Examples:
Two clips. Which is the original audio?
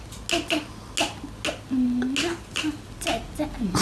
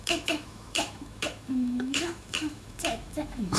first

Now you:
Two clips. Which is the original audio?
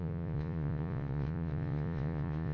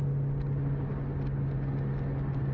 second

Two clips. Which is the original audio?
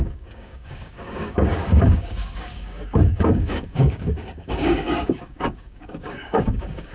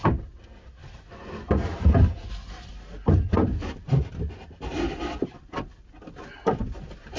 second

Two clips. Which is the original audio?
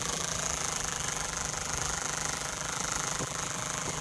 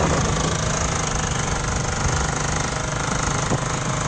second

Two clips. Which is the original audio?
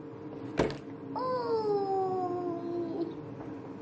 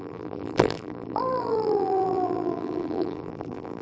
first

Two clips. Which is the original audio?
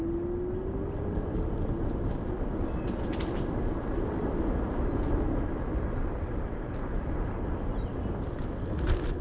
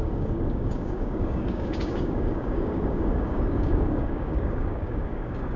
first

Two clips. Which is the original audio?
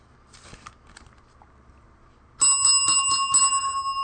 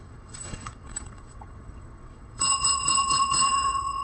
first